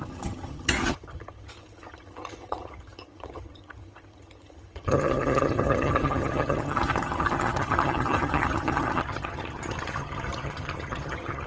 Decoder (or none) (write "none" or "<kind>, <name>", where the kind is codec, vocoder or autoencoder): vocoder, HiFi-GAN